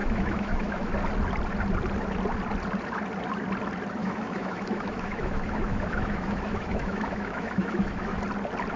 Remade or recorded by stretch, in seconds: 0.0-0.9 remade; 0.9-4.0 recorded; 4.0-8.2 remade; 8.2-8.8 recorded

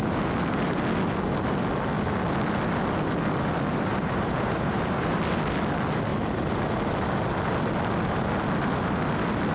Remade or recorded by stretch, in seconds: 0.0-3.7 recorded; 3.7-5.2 remade; 5.2-9.5 recorded

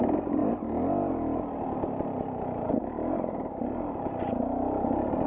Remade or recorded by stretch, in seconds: 0.0-5.3 recorded

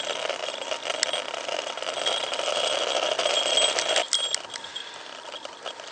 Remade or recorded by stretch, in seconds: 0.0-5.9 recorded

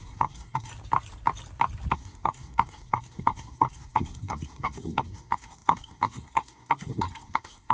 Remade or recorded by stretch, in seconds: 0.0-0.7 remade; 0.7-1.9 recorded; 1.9-7.7 remade